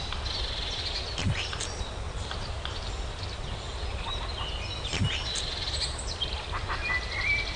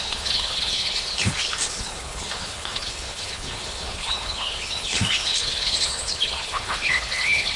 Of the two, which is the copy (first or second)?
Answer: second